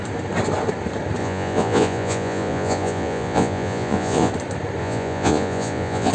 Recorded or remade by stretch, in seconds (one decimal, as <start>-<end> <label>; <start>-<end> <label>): 0.0-1.2 recorded; 1.2-4.3 remade; 4.3-4.8 recorded; 4.8-6.1 remade